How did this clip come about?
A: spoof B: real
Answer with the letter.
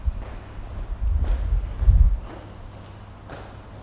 B